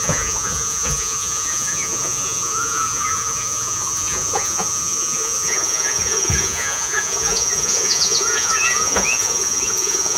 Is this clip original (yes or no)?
no